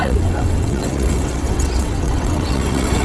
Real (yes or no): no